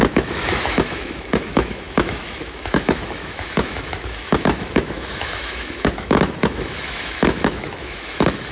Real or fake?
fake